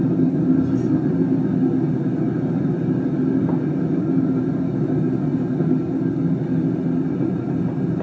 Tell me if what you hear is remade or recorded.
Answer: recorded